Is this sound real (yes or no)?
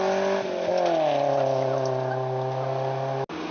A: yes